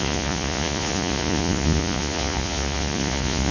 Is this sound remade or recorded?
remade